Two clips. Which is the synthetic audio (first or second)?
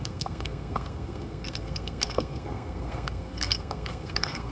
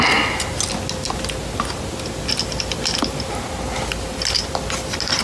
first